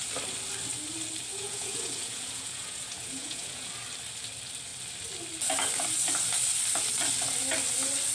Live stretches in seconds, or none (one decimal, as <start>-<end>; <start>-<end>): 0.0-1.3; 3.7-8.1

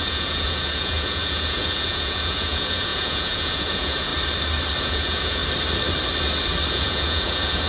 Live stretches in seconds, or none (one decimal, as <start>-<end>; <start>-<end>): 4.1-4.8; 5.4-6.7

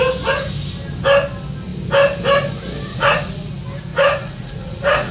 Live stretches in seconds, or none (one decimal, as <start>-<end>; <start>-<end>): 0.0-2.9; 3.5-3.9

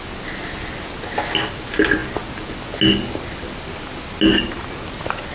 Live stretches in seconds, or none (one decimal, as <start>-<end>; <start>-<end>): 0.0-5.3

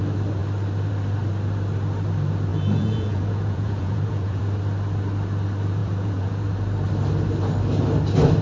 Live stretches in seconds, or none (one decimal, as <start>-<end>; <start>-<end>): 0.0-2.5; 4.4-5.8; 6.5-8.4

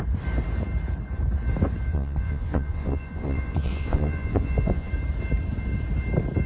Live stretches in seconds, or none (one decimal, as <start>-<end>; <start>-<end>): 0.0-1.9; 4.9-6.5

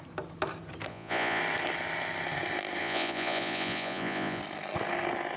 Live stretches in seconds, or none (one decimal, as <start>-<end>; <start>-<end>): 0.0-0.9; 1.4-2.8; 4.4-5.4

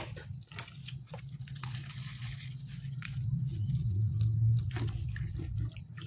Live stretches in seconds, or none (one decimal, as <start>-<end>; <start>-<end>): 0.0-0.8; 4.1-6.1